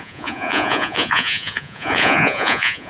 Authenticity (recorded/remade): remade